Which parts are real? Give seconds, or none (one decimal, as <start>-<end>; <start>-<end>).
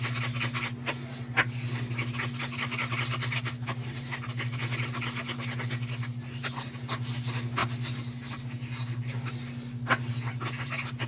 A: 0.0-11.1